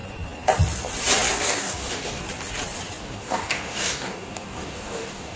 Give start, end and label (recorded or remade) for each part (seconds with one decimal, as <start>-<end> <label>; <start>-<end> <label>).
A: 0.0-1.3 recorded; 1.3-2.2 remade; 2.2-3.0 recorded; 3.0-5.4 remade